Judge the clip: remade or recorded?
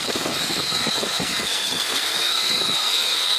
remade